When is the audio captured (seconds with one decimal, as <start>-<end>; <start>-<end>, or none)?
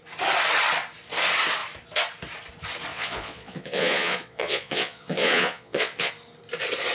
0.0-2.9; 6.1-6.9